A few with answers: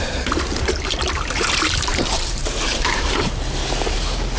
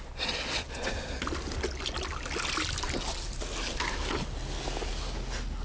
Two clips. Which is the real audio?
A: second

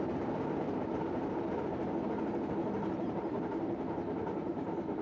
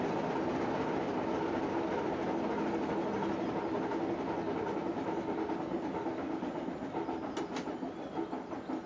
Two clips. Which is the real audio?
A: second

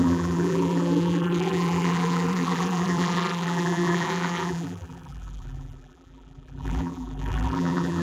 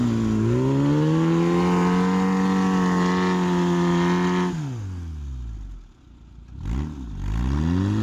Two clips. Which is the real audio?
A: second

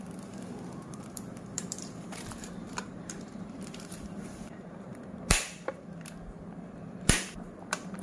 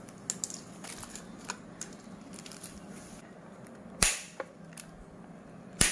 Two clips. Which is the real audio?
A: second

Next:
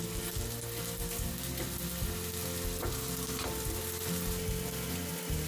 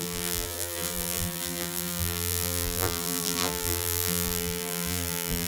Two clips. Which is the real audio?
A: first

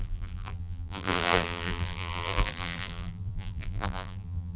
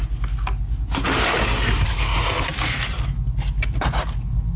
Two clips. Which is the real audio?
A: second